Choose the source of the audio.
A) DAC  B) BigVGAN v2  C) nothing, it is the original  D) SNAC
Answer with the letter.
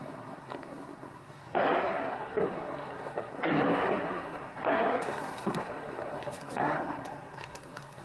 D